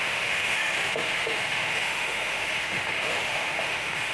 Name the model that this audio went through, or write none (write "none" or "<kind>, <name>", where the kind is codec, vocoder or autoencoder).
autoencoder, DAC-VAE